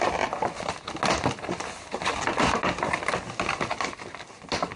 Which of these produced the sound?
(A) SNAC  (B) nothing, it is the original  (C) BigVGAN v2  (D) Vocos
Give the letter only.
B